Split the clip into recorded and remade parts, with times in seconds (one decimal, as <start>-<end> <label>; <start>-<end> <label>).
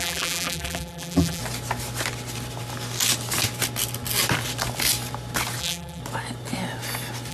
0.0-1.4 remade; 1.4-5.6 recorded; 5.6-6.0 remade; 6.0-7.3 recorded